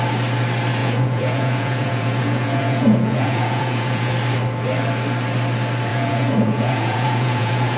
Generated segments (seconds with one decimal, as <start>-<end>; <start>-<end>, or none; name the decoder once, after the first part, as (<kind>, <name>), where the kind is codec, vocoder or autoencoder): 0.8-4.1 (vocoder, Vocos); 5.9-7.8